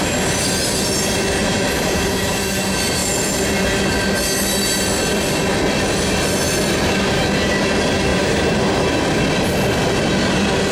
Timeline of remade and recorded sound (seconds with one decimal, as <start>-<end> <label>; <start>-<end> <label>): 0.0-1.4 recorded; 1.4-2.5 remade; 2.5-8.1 recorded; 8.1-9.2 remade; 9.2-10.7 recorded